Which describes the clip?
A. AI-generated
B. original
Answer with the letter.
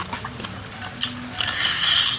B